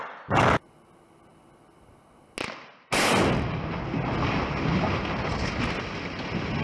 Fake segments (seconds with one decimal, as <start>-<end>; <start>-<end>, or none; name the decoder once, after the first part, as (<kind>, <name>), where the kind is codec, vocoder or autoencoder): none